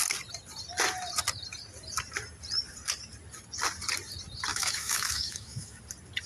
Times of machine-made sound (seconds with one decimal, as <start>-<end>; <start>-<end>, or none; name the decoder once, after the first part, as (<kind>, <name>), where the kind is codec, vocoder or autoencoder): 4.5-5.8 (autoencoder, DAC-VAE)